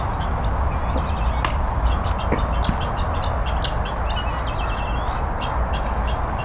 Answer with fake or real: real